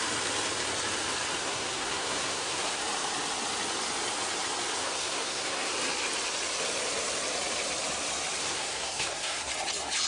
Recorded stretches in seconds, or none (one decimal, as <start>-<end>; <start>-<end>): 0.0-1.4; 2.8-4.8; 5.7-8.4; 9.5-10.1

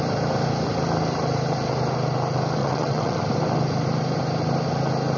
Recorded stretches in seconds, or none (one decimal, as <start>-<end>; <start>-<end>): 0.0-2.6; 3.2-5.2

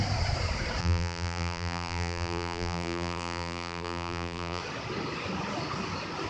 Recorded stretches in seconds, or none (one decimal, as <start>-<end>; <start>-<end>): 0.0-0.8; 4.6-6.3

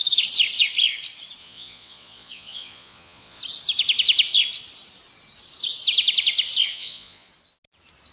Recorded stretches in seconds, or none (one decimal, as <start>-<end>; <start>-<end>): 0.0-1.4; 3.4-6.7; 7.3-8.1

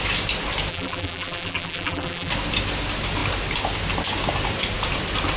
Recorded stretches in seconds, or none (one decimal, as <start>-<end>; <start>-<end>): 0.0-0.7; 2.3-5.4